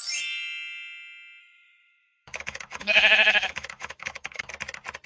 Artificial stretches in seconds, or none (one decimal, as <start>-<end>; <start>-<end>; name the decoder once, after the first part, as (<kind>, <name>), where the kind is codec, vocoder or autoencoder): 1.4-4.5 (autoencoder, DAC-VAE)